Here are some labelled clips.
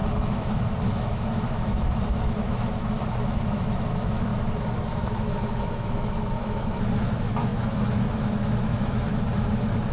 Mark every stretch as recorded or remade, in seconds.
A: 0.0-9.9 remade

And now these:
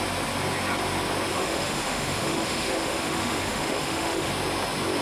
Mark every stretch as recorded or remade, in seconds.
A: 0.0-1.3 recorded; 1.3-4.3 remade; 4.3-5.0 recorded

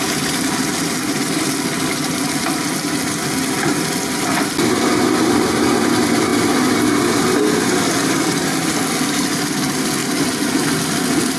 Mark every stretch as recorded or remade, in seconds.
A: 0.0-11.4 recorded

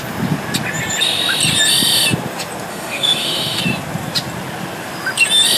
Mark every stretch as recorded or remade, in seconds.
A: 0.0-2.7 recorded; 2.7-3.6 remade; 3.6-5.6 recorded

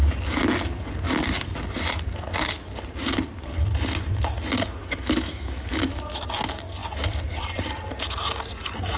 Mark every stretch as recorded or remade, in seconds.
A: 0.0-4.8 recorded; 4.8-6.2 remade; 6.2-9.0 recorded

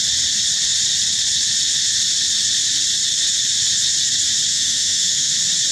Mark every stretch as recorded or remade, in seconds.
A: 0.0-4.5 recorded; 4.5-5.3 remade; 5.3-5.7 recorded

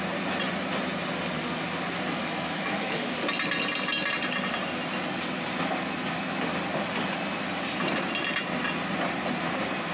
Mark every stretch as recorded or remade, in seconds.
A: 0.0-2.2 recorded; 2.2-3.1 remade; 3.1-9.9 recorded

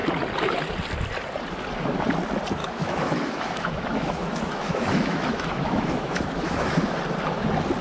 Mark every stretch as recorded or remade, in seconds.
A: 0.0-2.6 recorded; 2.6-7.0 remade; 7.0-7.8 recorded